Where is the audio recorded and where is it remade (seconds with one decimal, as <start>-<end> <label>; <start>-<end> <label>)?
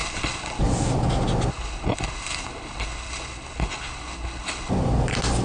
0.0-0.6 remade; 0.6-1.5 recorded; 1.5-4.7 remade; 4.7-5.4 recorded